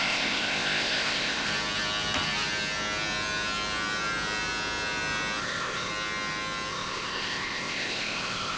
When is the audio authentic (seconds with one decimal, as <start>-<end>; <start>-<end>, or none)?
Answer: 1.5-5.4; 5.9-6.7